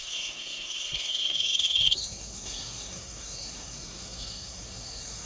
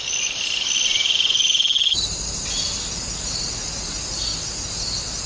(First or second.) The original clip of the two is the second